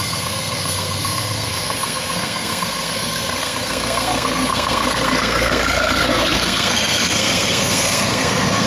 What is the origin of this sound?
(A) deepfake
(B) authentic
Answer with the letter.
A